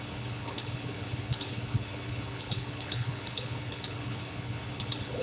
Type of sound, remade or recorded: remade